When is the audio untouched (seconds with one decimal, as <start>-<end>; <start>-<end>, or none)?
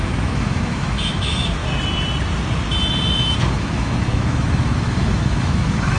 1.6-3.5